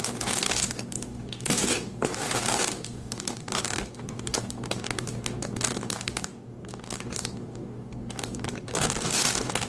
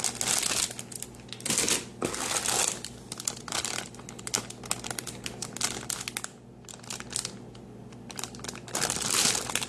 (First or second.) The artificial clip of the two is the first